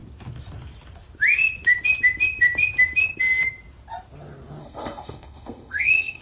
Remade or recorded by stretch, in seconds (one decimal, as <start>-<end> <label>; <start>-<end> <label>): 0.0-4.6 recorded; 4.6-6.2 remade